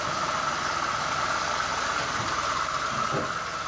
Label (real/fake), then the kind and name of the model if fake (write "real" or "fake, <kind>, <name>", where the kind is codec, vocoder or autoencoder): real